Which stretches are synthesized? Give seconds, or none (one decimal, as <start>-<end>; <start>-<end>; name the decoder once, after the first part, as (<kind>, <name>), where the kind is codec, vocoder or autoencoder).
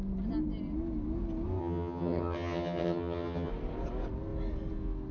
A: 1.6-3.5 (vocoder, HiFi-GAN)